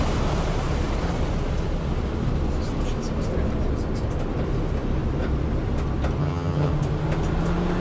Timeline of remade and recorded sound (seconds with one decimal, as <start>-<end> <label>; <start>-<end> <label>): 0.0-6.2 recorded; 6.2-6.7 remade; 6.7-7.8 recorded